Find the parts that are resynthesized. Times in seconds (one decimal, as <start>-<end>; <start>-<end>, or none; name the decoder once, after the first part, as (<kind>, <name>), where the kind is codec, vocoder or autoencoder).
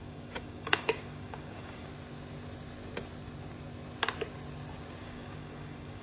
0.0-1.9 (codec, DAC); 5.0-6.0